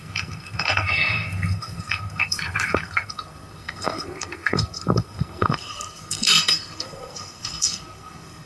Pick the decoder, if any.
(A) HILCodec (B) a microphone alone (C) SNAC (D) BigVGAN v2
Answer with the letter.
C